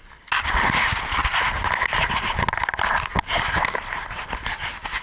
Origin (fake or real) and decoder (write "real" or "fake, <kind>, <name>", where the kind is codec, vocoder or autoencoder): real